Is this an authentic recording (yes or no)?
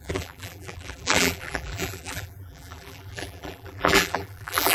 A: no